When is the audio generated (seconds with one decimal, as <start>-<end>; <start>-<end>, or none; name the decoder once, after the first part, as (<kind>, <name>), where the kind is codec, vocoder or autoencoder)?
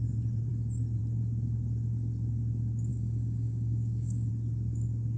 2.9-4.3 (codec, DAC)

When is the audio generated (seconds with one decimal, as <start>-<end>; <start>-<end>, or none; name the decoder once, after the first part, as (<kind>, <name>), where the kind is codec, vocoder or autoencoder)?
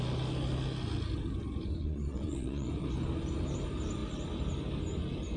1.8-2.7 (vocoder, Vocos)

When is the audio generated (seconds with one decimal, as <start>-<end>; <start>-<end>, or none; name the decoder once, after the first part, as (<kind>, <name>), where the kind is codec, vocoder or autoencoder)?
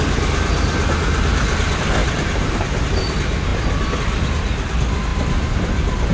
2.0-2.8 (vocoder, BigVGAN v2)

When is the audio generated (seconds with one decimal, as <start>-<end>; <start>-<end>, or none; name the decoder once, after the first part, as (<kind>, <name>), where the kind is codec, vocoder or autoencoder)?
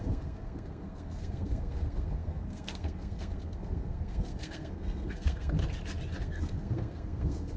0.0-5.6 (codec, SNAC); 6.2-7.6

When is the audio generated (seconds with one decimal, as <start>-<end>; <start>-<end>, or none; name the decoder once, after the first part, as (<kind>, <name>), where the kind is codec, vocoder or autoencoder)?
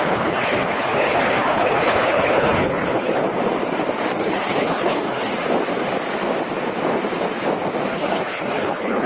0.0-3.2 (codec, HILCodec); 4.2-5.3; 7.9-9.1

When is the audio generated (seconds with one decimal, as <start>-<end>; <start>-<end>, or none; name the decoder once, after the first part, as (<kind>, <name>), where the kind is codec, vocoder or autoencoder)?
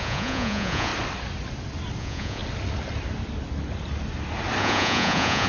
0.0-0.9 (vocoder, Vocos); 2.0-2.4; 4.6-5.5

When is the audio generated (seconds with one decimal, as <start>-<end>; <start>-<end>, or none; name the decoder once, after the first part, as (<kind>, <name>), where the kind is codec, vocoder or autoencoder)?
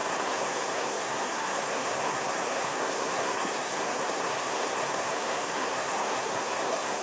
0.0-7.0 (codec, SNAC)